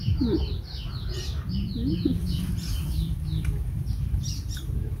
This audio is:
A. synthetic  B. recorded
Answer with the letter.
A